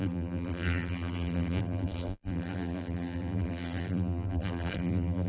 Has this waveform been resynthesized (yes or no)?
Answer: yes